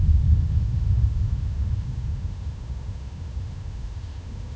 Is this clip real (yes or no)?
no